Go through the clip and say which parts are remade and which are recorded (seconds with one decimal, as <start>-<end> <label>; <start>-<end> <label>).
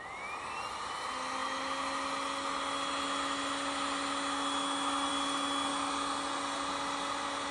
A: 0.0-7.5 recorded